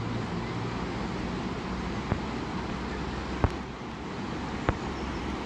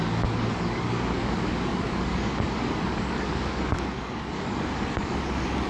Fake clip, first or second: second